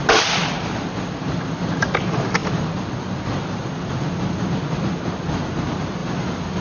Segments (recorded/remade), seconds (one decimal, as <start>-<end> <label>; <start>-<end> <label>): 0.0-6.0 recorded; 6.0-6.6 remade